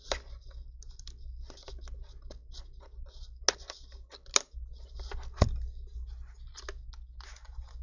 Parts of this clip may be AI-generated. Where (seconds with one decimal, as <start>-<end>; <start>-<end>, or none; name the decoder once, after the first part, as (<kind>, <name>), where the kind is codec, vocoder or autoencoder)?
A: none